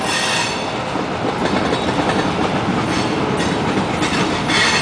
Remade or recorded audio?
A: recorded